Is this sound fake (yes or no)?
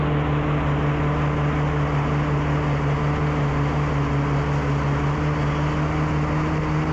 no